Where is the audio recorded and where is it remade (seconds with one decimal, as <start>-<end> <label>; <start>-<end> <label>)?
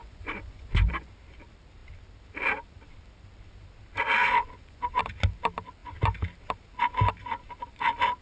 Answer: 0.0-1.1 remade; 1.1-4.2 recorded; 4.2-5.0 remade; 5.0-8.2 recorded